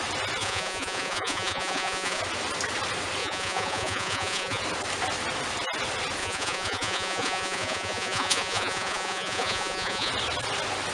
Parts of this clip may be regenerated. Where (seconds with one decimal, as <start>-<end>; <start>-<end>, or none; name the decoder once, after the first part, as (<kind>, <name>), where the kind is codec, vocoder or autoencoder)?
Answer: 0.4-2.2 (vocoder, Vocos); 3.2-4.6; 6.2-10.1